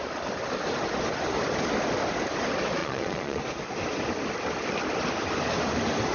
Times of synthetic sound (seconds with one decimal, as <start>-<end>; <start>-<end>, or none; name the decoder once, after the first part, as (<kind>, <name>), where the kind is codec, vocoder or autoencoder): 2.8-3.4 (vocoder, Vocos)